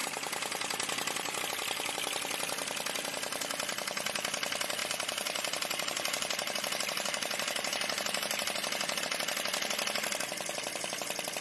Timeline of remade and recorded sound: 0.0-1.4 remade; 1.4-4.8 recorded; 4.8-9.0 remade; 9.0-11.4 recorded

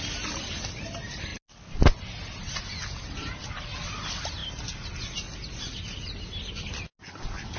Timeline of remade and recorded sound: 0.0-7.6 recorded

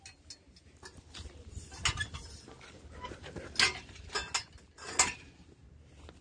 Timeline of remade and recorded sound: 0.0-6.2 recorded